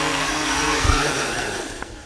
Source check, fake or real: fake